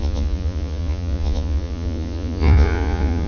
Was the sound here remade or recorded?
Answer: remade